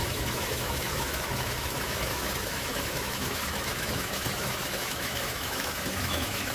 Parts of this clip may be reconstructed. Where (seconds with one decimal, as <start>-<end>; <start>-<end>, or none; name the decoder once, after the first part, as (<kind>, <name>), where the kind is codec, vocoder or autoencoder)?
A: 0.0-6.5 (autoencoder, DAC-VAE)